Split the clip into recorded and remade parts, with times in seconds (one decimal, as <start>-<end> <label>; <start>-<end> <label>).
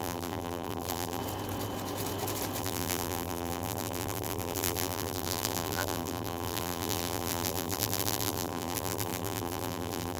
0.0-1.2 remade; 1.2-2.6 recorded; 2.6-10.2 remade